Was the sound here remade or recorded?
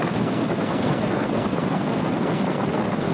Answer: remade